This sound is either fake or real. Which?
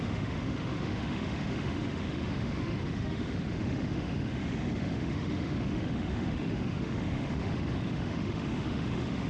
fake